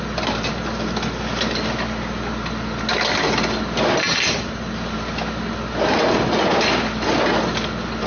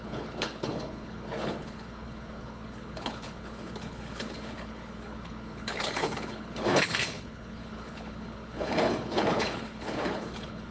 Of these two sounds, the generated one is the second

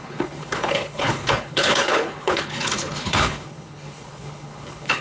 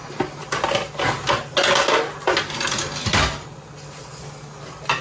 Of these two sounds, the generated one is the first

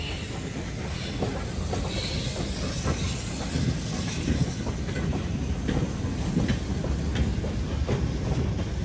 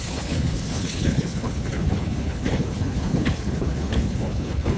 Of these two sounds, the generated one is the second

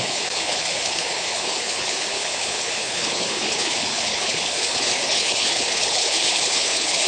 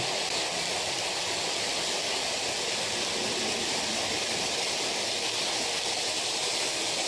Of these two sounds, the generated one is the first